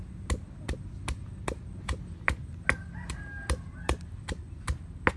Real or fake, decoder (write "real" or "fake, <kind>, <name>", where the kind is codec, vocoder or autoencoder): real